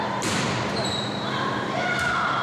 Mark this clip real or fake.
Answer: fake